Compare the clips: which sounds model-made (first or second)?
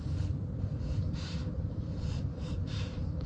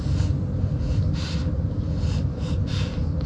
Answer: first